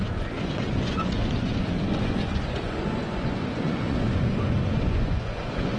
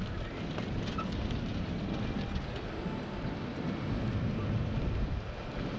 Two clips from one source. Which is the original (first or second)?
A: second